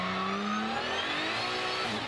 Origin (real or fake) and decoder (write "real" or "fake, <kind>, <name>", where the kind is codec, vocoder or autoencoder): real